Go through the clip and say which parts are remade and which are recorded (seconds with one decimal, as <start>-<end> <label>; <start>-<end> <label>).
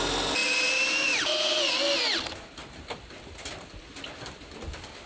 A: 0.0-0.4 recorded; 0.4-1.7 remade; 1.7-5.1 recorded